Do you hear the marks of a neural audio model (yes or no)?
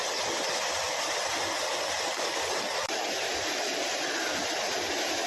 no